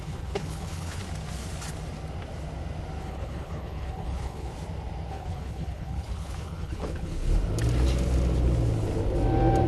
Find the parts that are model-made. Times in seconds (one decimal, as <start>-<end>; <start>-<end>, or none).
0.0-1.0; 3.0-4.5; 5.1-7.3